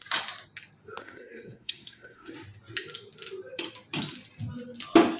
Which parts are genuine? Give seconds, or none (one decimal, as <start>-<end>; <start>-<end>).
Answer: 0.0-1.0; 2.3-5.2